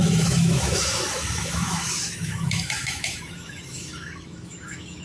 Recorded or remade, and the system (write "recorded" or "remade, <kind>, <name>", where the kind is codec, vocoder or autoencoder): remade, autoencoder, DAC-VAE